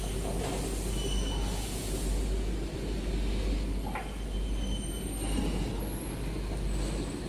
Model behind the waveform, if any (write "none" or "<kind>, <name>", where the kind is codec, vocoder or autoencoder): none